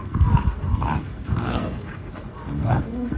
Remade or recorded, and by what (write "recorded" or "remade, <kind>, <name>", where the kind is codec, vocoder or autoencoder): remade, codec, SNAC